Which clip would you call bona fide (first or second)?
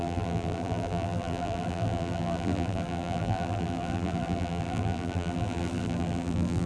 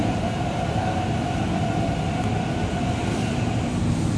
second